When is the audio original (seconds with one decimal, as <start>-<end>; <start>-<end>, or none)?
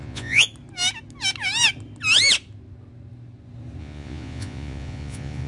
0.5-3.8